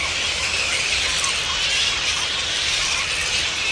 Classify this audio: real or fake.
real